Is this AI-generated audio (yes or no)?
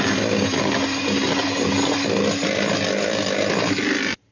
no